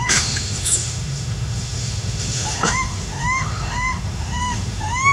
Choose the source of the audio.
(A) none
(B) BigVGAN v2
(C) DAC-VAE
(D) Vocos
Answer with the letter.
C